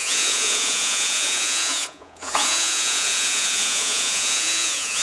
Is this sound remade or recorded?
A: remade